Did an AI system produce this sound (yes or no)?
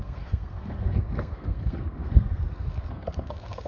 yes